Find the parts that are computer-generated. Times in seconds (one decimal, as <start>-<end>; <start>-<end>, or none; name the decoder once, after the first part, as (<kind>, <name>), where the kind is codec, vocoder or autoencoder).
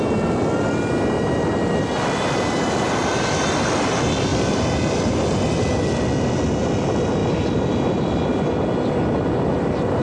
4.3-5.1 (vocoder, BigVGAN v2); 7.2-8.9